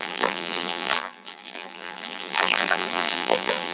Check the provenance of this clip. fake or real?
fake